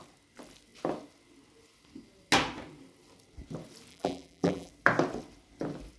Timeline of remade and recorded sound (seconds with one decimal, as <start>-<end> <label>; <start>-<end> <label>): 0.0-3.9 recorded; 3.9-4.7 remade; 4.7-6.0 recorded

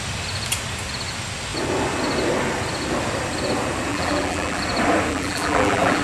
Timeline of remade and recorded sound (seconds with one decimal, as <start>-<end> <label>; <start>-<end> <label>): 0.0-3.9 recorded; 3.9-4.6 remade; 4.6-5.1 recorded; 5.1-6.0 remade

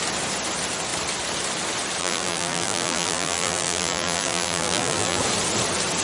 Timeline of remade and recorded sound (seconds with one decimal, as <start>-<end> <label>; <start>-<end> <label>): 0.0-2.0 recorded; 2.0-5.2 remade; 5.2-6.0 recorded

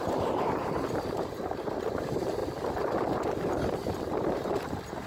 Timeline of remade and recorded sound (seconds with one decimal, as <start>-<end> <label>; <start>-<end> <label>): 0.0-2.4 remade; 2.4-3.4 recorded; 3.4-5.1 remade

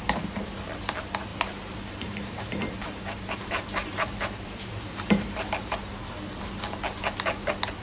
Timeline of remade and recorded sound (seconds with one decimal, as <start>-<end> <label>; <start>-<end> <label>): 0.0-1.3 recorded; 1.3-5.5 remade; 5.5-7.8 recorded

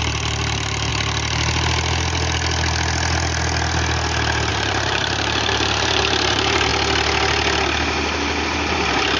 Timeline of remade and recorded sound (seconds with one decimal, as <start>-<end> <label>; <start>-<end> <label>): 0.0-0.9 remade; 0.9-4.5 recorded; 4.5-6.7 remade; 6.7-8.7 recorded; 8.7-9.2 remade

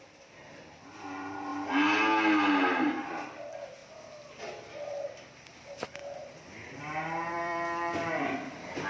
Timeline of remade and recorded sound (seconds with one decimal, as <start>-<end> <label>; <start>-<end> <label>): 0.0-1.5 remade; 1.5-3.1 recorded; 3.1-3.8 remade; 3.8-4.5 recorded; 4.5-6.0 remade; 6.0-7.3 recorded; 7.3-8.9 remade

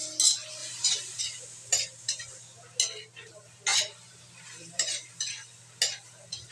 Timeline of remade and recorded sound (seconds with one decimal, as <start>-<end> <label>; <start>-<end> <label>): 0.0-0.6 recorded; 0.6-1.2 remade; 1.2-3.7 recorded; 3.7-5.3 remade; 5.3-6.5 recorded